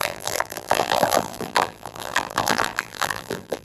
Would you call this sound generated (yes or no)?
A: yes